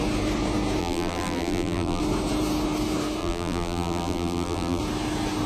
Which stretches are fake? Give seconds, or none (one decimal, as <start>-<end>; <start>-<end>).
0.8-2.0; 3.2-4.8